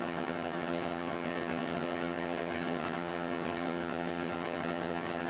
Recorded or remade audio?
remade